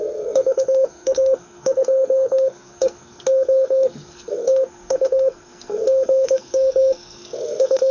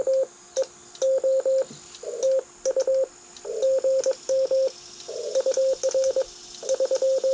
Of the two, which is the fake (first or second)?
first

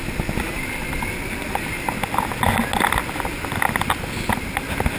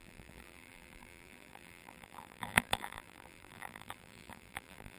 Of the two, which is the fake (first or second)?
second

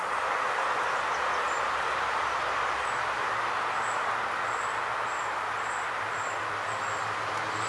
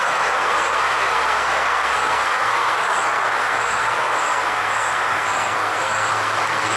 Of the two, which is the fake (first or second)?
second